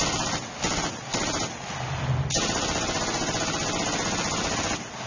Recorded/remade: recorded